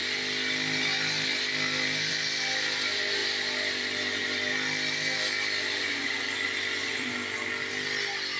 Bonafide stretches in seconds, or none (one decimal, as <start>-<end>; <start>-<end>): 0.0-8.4